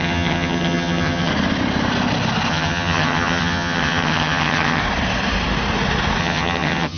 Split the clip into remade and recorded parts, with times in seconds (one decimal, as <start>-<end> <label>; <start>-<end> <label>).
0.0-1.3 remade; 1.3-2.5 recorded; 2.5-4.8 remade; 4.8-6.2 recorded; 6.2-7.0 remade